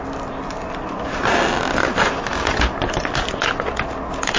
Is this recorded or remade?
recorded